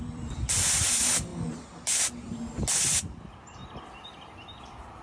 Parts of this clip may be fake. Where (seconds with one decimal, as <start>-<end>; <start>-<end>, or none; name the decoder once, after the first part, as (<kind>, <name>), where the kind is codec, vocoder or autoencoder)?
0.0-1.3 (vocoder, BigVGAN v2); 2.8-3.6; 4.6-5.0